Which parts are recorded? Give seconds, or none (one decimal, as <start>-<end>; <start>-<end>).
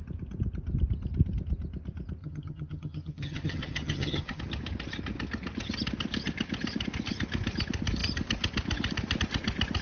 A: 0.0-2.2; 4.4-9.8